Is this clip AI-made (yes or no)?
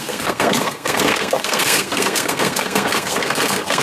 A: yes